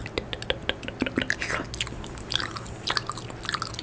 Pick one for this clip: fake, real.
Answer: real